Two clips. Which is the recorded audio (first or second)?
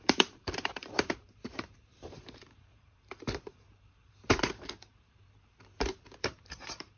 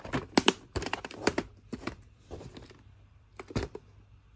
second